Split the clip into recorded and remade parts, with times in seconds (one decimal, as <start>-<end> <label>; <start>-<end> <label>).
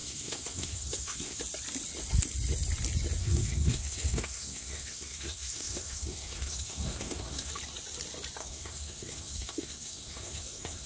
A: 0.0-1.4 remade; 1.4-3.2 recorded; 3.2-7.5 remade; 7.5-8.4 recorded; 8.4-10.9 remade